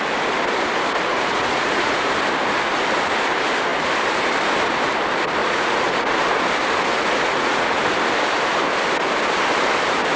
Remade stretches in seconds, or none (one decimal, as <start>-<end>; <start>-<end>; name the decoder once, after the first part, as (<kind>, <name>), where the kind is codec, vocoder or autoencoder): 1.1-2.1 (vocoder, Vocos); 5.4-6.2; 6.9-7.8

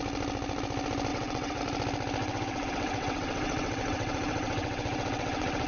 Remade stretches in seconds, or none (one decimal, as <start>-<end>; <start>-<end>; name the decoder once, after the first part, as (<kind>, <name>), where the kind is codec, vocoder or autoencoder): 1.1-1.6 (vocoder, WaveNeXt); 2.2-5.7